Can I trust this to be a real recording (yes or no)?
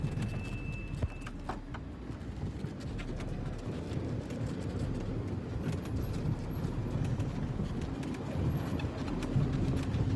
yes